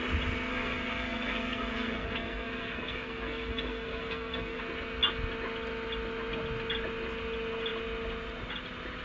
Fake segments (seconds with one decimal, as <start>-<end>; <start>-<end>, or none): 0.5-4.6